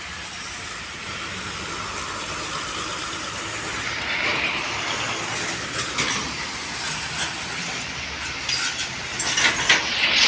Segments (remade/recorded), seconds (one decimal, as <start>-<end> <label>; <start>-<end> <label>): 0.0-2.9 recorded; 2.9-3.6 remade; 3.6-4.3 recorded; 4.3-5.0 remade; 5.0-10.3 recorded